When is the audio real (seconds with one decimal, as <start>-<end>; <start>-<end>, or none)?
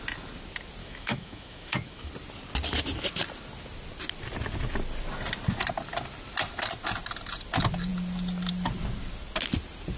0.0-0.8; 2.1-10.0